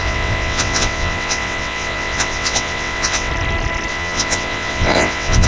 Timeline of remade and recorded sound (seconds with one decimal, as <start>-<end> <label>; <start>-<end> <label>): 0.0-3.3 remade; 3.3-3.9 recorded; 3.9-5.5 remade